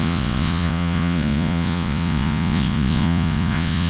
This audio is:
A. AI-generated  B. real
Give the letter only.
A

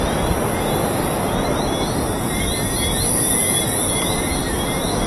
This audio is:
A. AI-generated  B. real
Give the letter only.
B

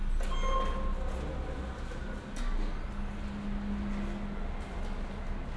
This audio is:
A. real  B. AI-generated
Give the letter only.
A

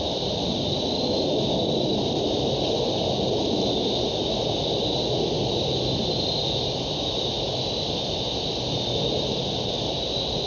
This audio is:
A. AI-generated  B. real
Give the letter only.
B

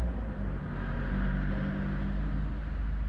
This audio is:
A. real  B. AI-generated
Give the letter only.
A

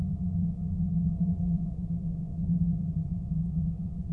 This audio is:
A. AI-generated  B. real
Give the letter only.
A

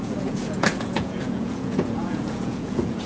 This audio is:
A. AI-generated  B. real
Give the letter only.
A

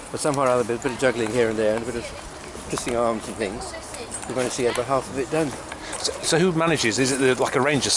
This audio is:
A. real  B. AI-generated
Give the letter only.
A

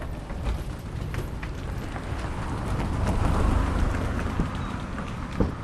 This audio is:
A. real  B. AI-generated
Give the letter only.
A